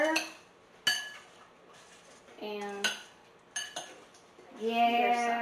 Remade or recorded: recorded